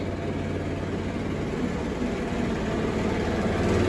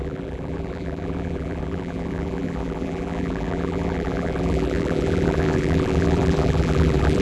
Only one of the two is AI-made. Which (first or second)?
second